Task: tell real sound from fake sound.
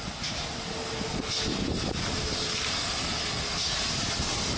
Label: real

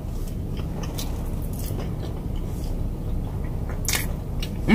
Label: real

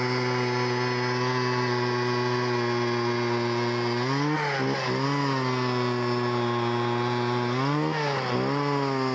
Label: real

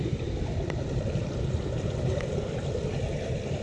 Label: fake